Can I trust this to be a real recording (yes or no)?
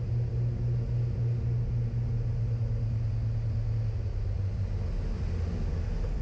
yes